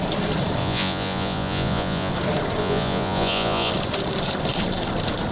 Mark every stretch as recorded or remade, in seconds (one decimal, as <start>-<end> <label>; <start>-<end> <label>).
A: 0.0-0.6 recorded; 0.6-2.1 remade; 2.1-2.6 recorded; 2.6-3.7 remade; 3.7-5.3 recorded